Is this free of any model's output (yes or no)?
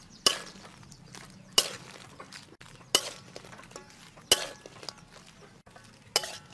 yes